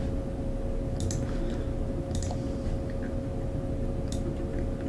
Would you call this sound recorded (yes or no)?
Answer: yes